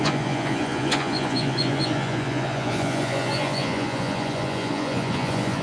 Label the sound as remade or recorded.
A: remade